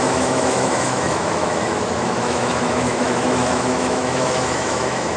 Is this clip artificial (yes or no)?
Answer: yes